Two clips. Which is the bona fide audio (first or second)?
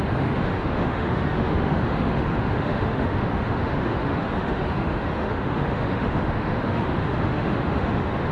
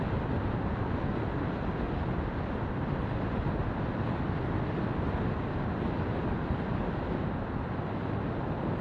second